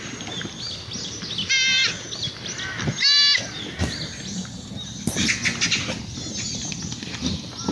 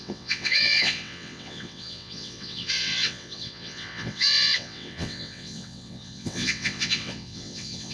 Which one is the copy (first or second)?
second